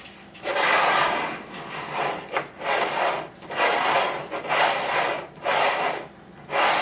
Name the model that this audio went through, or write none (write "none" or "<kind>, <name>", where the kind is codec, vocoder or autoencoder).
vocoder, BigVGAN v2